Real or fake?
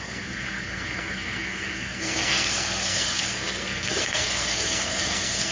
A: fake